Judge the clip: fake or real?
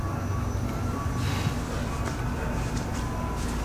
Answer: real